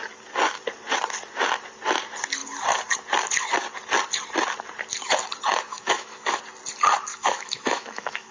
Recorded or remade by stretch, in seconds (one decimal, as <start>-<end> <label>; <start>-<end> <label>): 0.0-5.7 recorded; 5.7-6.4 remade; 6.4-7.1 recorded; 7.1-8.3 remade